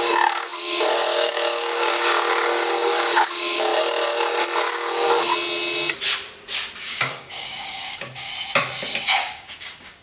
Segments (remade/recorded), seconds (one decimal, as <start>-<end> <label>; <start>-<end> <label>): 0.0-3.7 remade; 3.7-4.7 recorded; 4.7-5.3 remade; 5.3-6.8 recorded; 6.8-8.3 remade; 8.3-9.0 recorded; 9.0-10.0 remade